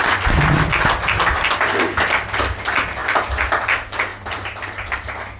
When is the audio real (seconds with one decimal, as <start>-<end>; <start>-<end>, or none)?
0.0-5.4

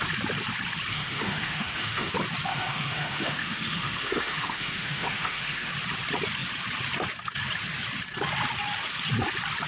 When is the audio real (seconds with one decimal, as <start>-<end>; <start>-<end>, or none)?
0.0-0.9; 2.1-2.5; 5.7-9.7

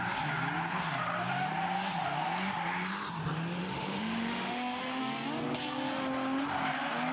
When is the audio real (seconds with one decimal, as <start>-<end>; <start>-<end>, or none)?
0.0-3.6; 5.0-7.1

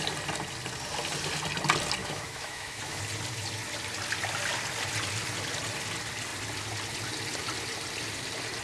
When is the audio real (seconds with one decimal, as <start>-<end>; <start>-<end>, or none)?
0.0-2.0; 3.0-8.6

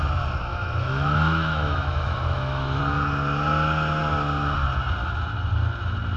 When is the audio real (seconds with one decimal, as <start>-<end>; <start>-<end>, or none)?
0.0-0.5; 2.8-6.2